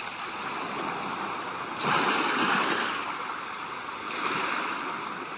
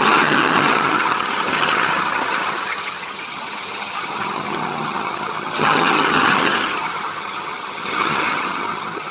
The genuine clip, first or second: first